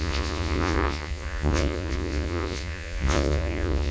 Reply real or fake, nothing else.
fake